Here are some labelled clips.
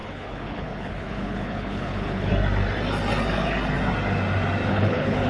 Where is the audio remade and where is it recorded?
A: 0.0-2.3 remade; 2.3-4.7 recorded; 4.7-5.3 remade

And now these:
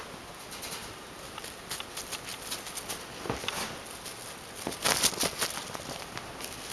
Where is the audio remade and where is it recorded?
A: 0.0-6.7 recorded

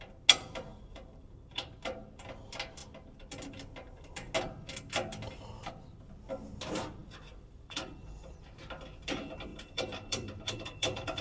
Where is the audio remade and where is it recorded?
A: 0.0-0.7 recorded; 0.7-1.7 remade; 1.7-7.0 recorded; 7.0-8.3 remade; 8.3-9.5 recorded; 9.5-11.2 remade

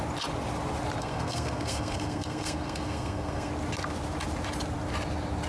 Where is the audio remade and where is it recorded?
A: 0.0-1.0 recorded; 1.0-3.5 remade; 3.5-5.5 recorded